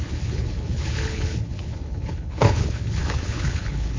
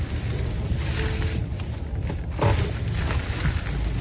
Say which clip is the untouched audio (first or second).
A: second